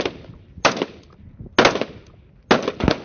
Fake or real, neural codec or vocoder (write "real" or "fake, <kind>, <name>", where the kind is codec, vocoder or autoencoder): real